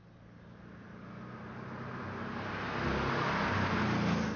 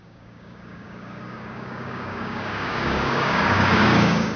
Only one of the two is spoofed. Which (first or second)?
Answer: second